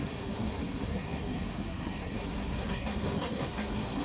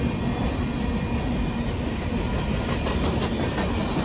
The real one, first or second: second